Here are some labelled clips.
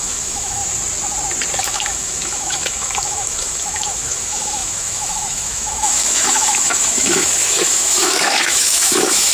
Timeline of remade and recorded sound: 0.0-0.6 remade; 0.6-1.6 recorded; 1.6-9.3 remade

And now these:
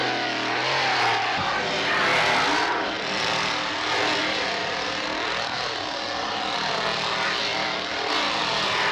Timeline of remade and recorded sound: 0.0-8.9 recorded

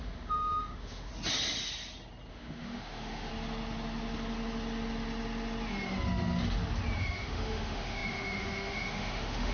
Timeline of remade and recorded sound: 0.0-1.1 remade; 1.1-2.3 recorded; 2.3-3.3 remade; 3.3-7.0 recorded; 7.0-9.5 remade

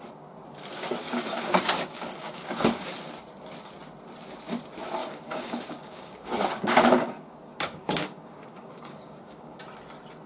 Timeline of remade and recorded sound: 0.0-1.0 recorded; 1.0-2.9 remade; 2.9-5.0 recorded; 5.0-9.6 remade; 9.6-10.3 recorded

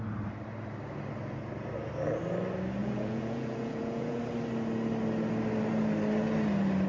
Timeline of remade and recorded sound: 0.0-2.8 recorded; 2.8-4.2 remade; 4.2-6.9 recorded

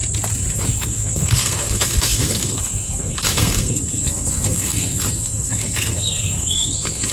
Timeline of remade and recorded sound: 0.0-0.5 recorded; 0.5-7.1 remade

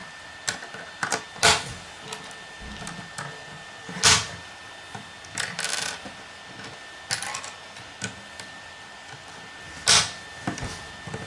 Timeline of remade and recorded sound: 0.0-11.3 recorded

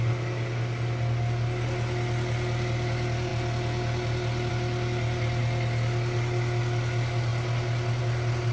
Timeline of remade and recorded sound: 0.0-8.5 recorded